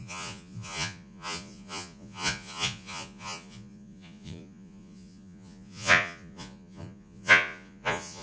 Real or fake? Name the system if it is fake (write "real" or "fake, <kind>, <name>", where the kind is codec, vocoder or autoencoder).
fake, vocoder, Vocos